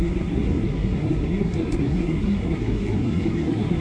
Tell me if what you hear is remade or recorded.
remade